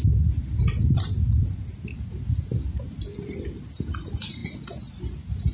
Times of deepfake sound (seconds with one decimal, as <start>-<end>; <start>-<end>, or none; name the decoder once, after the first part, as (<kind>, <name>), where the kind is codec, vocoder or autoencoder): none